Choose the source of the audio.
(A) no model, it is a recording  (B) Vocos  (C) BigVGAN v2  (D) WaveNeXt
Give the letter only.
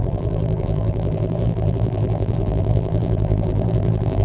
C